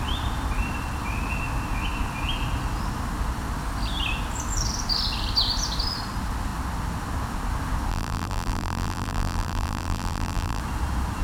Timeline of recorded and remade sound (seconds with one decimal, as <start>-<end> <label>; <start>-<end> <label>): 0.0-7.9 recorded; 7.9-10.6 remade; 10.6-11.2 recorded